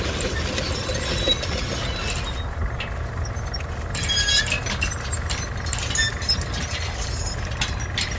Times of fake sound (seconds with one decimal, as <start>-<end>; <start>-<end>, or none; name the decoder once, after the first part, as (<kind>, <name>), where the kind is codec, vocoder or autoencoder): none